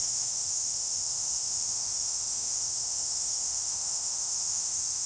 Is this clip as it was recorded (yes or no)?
no